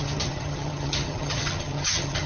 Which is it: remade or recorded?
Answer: remade